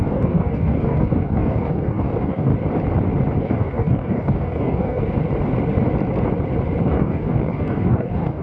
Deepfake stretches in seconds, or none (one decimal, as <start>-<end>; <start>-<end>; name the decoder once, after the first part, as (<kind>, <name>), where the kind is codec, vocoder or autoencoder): 0.0-2.5 (codec, DAC); 3.4-5.0; 6.8-8.4